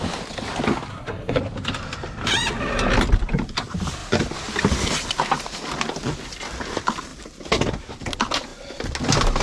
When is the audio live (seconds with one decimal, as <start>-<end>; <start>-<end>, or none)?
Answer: 0.0-0.9; 1.4-9.4